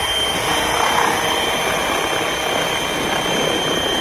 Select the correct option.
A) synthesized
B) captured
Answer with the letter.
B